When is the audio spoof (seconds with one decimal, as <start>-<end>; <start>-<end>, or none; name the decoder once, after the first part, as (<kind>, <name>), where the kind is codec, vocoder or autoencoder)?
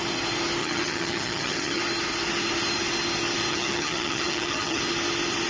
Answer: 0.6-1.8 (vocoder, HiFi-GAN); 3.5-4.8